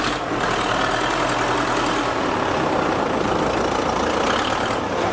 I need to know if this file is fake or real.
real